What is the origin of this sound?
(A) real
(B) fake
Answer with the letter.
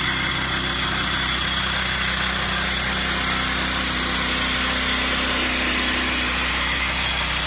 A